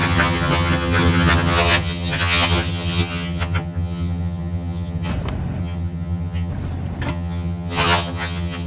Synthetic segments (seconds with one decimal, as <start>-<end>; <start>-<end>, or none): 0.0-5.1; 5.6-6.5; 7.1-8.7